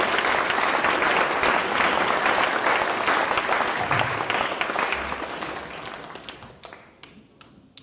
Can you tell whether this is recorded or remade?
recorded